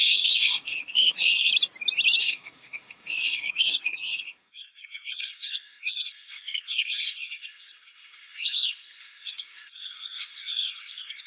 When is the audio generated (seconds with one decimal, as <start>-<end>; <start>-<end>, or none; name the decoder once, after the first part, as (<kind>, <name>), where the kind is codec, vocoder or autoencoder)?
0.0-1.5 (codec, SNAC); 2.2-11.3